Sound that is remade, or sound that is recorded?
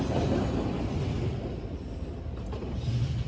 recorded